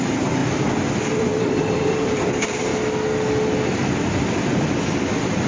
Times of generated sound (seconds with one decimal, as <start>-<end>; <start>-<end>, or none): 0.0-0.4; 1.1-2.7

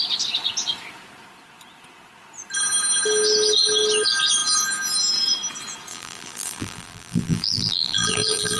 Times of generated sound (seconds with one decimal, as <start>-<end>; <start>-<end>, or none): 5.9-8.6

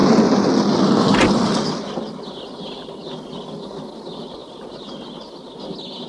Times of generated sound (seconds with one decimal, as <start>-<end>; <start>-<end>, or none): none

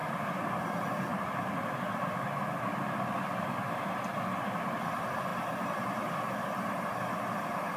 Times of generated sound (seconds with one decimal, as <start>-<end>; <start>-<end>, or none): 0.6-1.1; 4.8-7.8

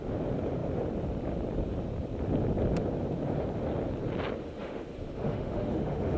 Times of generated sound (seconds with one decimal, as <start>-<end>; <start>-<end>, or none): 4.4-6.2

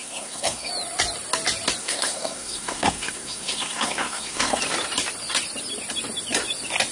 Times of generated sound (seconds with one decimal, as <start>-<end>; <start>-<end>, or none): 0.0-0.7; 1.8-4.6